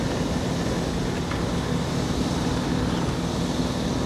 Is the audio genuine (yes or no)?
yes